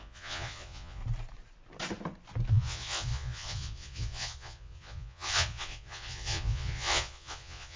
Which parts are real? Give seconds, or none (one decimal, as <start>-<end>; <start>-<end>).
1.0-2.5